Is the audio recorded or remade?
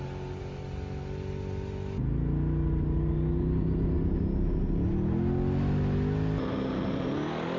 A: recorded